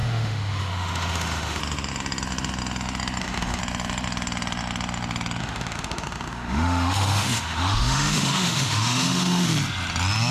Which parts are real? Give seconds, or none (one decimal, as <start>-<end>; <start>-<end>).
1.6-3.2; 3.6-5.4; 9.5-10.3